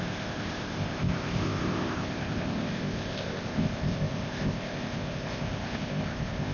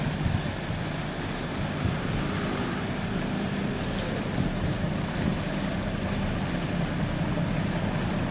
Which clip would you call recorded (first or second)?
second